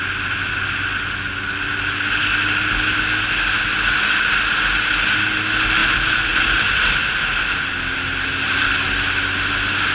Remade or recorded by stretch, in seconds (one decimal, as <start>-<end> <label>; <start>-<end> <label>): 0.0-9.9 recorded